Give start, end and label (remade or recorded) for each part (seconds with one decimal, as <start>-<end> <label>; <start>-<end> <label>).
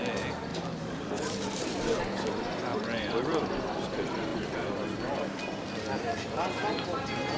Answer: 0.0-0.5 recorded; 0.5-2.0 remade; 2.0-2.7 recorded; 2.7-3.7 remade; 3.7-7.4 recorded